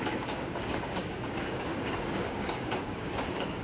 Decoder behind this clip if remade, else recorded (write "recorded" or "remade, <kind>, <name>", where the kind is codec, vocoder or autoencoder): remade, codec, DAC